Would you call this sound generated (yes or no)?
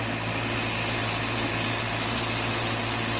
no